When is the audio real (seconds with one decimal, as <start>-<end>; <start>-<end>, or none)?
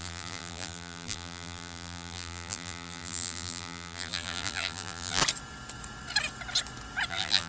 5.2-7.1